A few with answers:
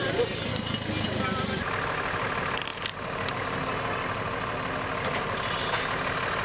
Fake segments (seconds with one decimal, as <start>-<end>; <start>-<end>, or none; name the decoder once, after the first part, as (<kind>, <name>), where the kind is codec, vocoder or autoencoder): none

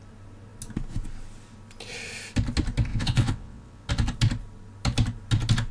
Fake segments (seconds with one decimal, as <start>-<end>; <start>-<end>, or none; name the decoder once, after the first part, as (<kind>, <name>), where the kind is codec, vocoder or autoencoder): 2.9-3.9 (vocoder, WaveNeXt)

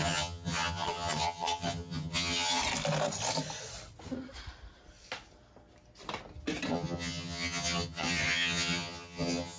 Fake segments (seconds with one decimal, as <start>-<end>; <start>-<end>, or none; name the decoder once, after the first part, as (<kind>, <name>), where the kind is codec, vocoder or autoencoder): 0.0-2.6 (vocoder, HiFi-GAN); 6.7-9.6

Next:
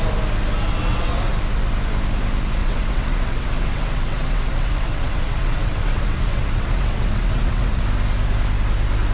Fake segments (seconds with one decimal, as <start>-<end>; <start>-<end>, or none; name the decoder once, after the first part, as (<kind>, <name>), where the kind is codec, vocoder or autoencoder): 0.7-1.3 (vocoder, WaveNeXt); 2.6-7.8

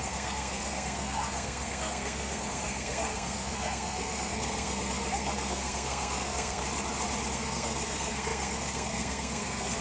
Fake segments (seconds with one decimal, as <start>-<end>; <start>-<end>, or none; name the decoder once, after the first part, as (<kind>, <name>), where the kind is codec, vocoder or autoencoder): 0.0-6.6 (codec, SNAC); 7.3-9.8

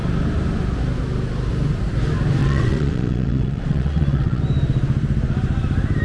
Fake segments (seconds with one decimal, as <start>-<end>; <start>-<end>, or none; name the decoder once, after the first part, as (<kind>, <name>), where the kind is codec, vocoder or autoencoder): 2.4-4.4 (vocoder, WaveNeXt)

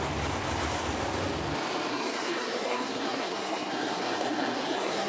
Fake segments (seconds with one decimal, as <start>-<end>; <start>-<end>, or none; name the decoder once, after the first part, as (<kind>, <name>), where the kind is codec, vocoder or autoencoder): 1.9-5.1 (codec, SNAC)

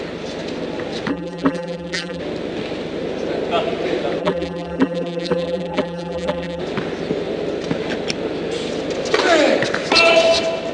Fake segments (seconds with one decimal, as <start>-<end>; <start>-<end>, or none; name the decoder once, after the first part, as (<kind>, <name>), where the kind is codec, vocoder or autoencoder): 1.1-2.2 (vocoder, BigVGAN v2); 4.2-6.6